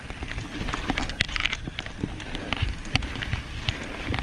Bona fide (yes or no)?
yes